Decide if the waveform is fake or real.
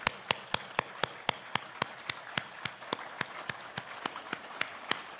real